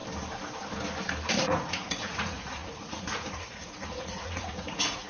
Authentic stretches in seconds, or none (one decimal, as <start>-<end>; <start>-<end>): 0.0-1.3